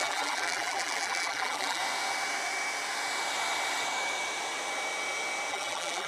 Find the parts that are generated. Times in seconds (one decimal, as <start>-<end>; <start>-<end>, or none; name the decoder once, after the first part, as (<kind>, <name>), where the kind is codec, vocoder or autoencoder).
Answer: 0.0-1.8 (vocoder, BigVGAN v2); 5.5-6.1

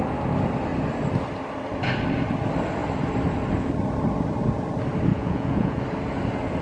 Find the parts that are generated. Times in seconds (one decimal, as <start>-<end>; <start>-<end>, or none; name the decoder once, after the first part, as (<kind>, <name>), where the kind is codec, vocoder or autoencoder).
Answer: 5.1-5.8 (vocoder, Vocos)

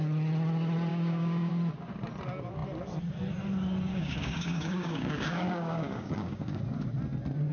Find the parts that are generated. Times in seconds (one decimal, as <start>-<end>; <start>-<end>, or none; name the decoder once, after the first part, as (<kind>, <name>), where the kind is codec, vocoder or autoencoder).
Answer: 0.9-1.5 (codec, DAC); 3.9-6.6

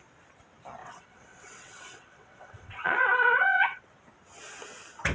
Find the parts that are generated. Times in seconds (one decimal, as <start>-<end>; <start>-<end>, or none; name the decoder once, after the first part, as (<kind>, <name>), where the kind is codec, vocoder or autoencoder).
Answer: 0.8-3.8 (vocoder, WaveNeXt)